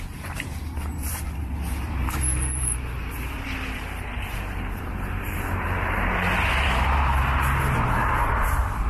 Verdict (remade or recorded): remade